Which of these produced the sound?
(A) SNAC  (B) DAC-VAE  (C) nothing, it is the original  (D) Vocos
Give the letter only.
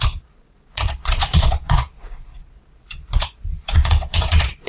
D